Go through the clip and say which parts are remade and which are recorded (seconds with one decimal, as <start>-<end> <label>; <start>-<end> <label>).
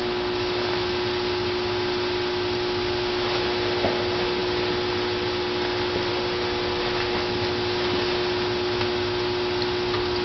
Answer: 0.0-10.2 recorded